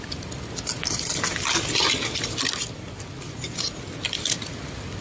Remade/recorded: recorded